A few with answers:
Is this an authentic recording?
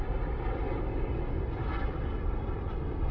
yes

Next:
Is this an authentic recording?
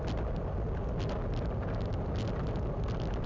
yes